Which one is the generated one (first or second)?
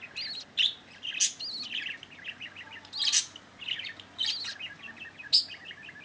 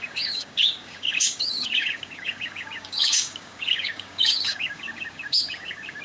second